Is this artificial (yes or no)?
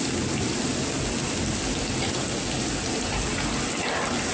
no